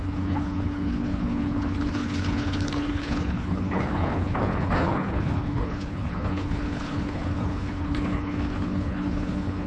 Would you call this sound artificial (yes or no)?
yes